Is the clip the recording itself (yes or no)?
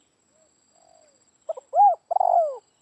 yes